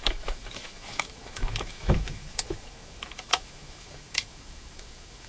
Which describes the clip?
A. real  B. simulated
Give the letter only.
B